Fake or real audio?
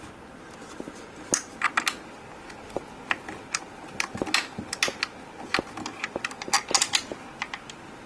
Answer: real